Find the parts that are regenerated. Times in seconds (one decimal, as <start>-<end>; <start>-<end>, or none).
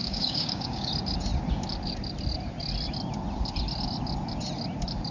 0.0-0.9